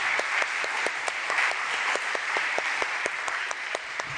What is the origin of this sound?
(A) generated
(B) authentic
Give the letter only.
A